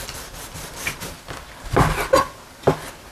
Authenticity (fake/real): real